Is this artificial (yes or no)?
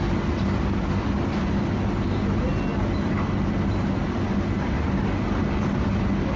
no